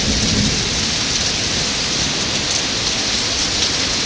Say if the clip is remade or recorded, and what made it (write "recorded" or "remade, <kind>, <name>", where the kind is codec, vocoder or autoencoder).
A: recorded